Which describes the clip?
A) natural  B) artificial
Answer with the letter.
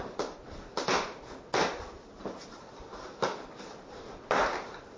A